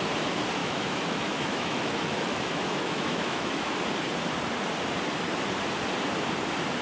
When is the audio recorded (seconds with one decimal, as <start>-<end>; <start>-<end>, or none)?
0.0-0.6; 3.8-6.8